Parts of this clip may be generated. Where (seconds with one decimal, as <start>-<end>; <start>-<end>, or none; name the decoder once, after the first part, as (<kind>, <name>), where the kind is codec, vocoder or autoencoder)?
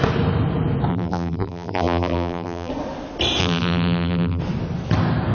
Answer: 0.9-2.7 (vocoder, BigVGAN v2); 3.4-4.4